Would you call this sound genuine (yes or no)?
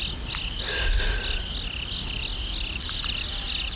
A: yes